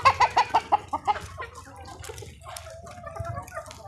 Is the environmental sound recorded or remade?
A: recorded